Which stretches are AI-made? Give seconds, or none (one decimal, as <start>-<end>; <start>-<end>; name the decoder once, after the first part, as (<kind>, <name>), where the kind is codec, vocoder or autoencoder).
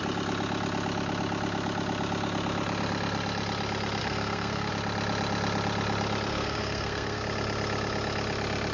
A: 4.0-4.7 (codec, SNAC); 6.3-7.2